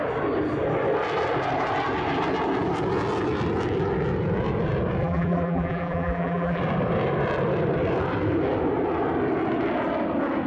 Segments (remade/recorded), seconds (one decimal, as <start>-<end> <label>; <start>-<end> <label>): 0.0-5.0 recorded; 5.0-6.6 remade; 6.6-10.5 recorded

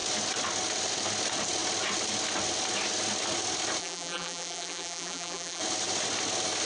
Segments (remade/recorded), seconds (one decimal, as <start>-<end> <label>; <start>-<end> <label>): 0.0-3.8 recorded; 3.8-5.6 remade; 5.6-6.7 recorded

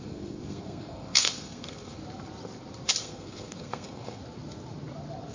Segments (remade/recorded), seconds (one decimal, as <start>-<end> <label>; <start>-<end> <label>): 0.0-2.0 remade; 2.0-3.0 recorded; 3.0-4.2 remade; 4.2-5.3 recorded